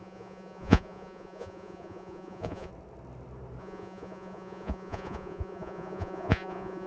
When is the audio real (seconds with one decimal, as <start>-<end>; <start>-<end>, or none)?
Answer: 2.7-3.6